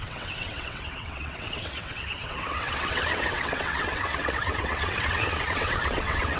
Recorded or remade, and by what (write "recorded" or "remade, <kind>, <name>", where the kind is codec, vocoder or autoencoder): remade, vocoder, WaveNeXt